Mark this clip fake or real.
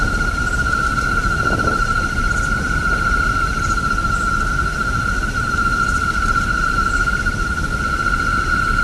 real